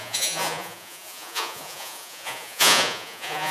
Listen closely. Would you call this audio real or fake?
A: fake